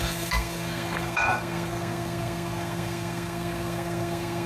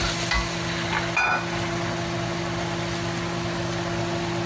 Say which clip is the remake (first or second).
first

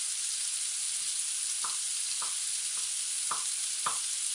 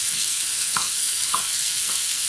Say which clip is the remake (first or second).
second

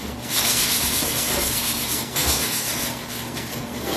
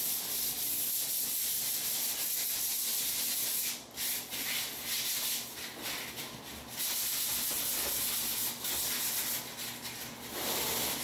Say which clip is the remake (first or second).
first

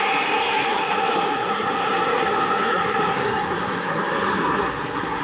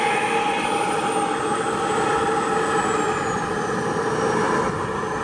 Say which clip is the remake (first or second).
first